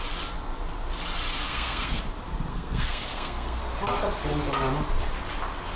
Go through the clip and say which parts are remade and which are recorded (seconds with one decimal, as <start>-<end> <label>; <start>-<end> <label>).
0.0-1.5 recorded; 1.5-2.0 remade; 2.0-2.5 recorded; 2.5-3.6 remade; 3.6-5.8 recorded